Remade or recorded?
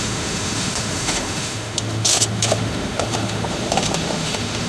remade